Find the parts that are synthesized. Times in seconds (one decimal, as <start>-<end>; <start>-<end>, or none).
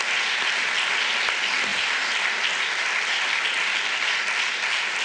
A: none